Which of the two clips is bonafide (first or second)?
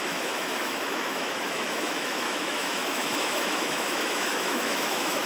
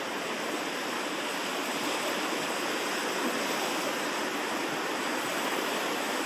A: second